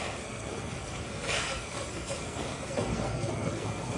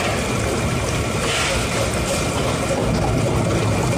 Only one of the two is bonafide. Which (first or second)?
second